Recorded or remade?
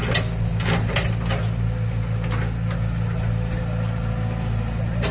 recorded